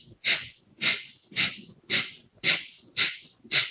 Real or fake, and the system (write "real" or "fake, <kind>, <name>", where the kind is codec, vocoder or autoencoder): fake, vocoder, Vocos